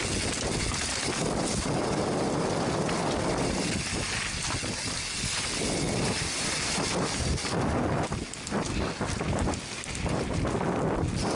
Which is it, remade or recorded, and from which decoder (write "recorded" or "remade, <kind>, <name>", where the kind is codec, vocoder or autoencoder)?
recorded